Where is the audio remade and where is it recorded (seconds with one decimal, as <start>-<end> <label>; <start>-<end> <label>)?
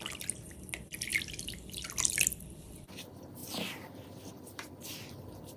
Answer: 0.0-1.1 remade; 1.1-2.0 recorded; 2.0-5.6 remade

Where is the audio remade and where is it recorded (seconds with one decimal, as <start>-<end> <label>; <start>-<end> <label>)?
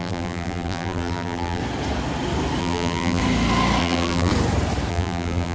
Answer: 0.0-1.6 remade; 1.6-2.6 recorded; 2.6-3.2 remade; 3.2-3.8 recorded; 3.8-4.3 remade; 4.3-4.9 recorded; 4.9-5.5 remade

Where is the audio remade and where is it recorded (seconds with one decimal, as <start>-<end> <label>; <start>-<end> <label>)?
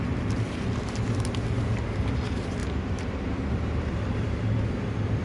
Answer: 0.0-2.6 recorded; 2.6-4.6 remade; 4.6-5.2 recorded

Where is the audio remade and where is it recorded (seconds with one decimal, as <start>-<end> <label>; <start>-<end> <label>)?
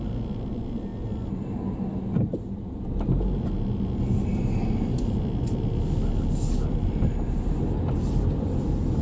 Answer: 0.0-9.0 recorded